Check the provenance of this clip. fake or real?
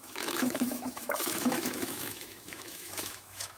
fake